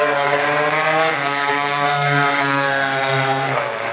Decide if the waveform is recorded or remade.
remade